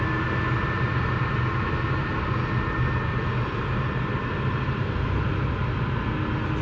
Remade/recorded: recorded